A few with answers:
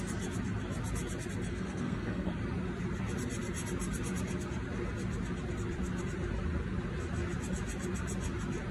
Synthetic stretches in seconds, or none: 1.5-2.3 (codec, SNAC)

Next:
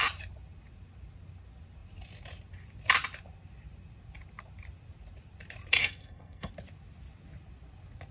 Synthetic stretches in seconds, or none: 5.8-6.5 (codec, SNAC)